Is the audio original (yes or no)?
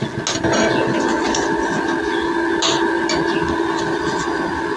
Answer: yes